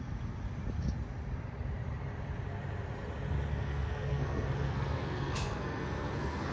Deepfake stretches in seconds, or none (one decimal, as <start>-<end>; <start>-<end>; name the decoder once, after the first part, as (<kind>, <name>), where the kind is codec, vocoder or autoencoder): 3.5-6.5 (codec, SNAC)